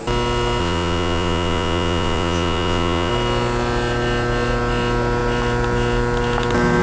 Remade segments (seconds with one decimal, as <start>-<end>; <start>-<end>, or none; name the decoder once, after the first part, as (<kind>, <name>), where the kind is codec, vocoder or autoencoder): 0.6-3.1 (vocoder, Vocos)